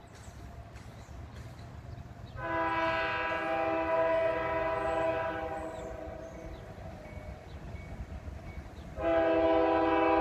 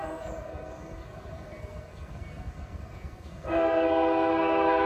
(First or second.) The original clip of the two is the first